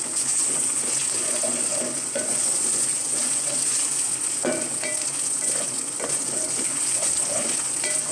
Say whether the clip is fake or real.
fake